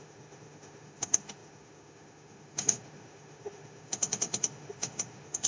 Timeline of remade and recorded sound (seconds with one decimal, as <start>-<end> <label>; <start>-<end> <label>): 0.0-5.5 remade